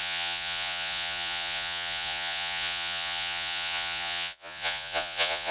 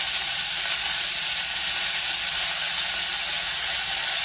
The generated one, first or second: first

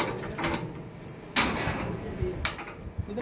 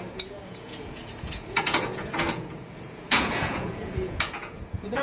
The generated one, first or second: second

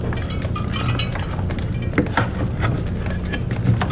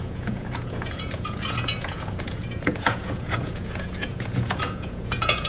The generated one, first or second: second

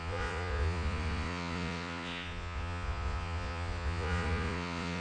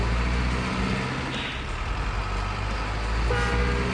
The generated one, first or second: first